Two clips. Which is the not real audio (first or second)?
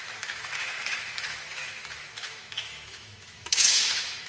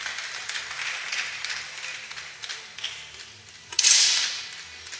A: first